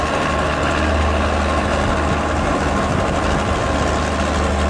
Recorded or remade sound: recorded